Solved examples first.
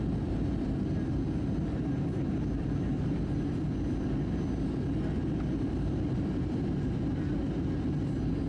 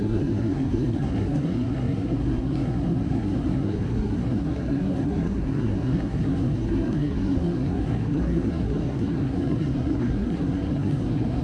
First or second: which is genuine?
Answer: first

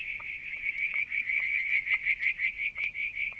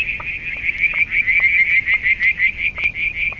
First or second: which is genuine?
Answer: second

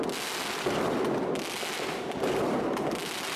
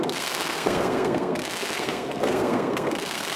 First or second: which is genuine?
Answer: first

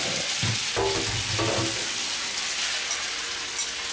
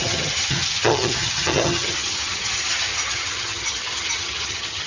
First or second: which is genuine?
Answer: first